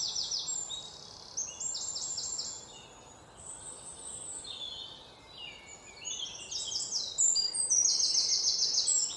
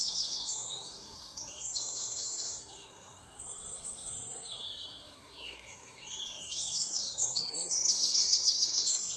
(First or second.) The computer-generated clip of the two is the second